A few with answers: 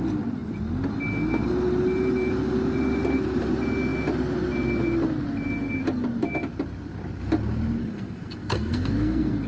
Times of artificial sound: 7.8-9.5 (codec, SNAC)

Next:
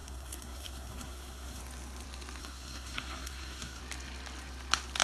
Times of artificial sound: 0.0-1.6 (codec, SNAC); 2.4-3.8

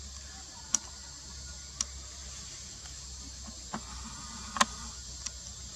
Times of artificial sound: none

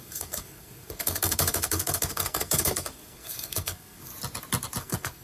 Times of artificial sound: 0.0-4.1 (codec, SNAC); 4.8-5.2

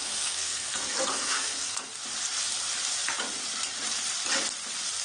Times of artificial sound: 0.0-1.9 (codec, SNAC)

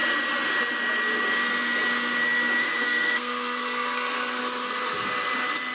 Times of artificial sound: 2.6-4.4 (codec, SNAC)